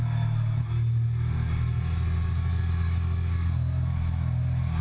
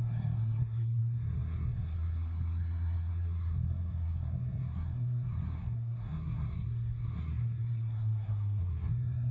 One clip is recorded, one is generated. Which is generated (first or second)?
second